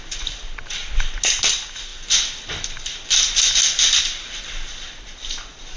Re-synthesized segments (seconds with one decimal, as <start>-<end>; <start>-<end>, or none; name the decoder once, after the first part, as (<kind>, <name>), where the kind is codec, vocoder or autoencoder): none